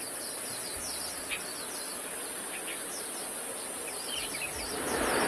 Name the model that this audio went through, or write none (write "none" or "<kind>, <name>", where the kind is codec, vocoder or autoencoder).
vocoder, BigVGAN v2